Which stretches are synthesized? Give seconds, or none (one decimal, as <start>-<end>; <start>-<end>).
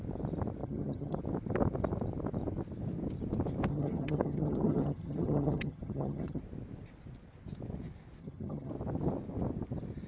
0.6-1.2; 3.7-6.4; 8.2-8.7